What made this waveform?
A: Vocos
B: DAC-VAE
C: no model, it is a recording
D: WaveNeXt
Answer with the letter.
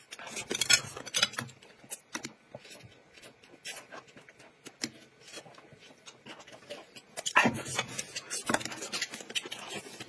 C